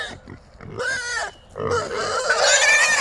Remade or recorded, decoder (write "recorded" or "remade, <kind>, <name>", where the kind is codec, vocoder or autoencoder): recorded